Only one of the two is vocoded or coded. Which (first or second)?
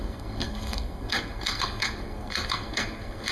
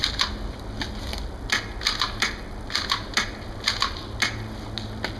first